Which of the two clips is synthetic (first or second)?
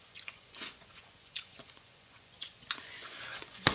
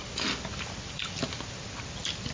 first